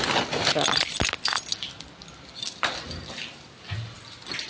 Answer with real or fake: real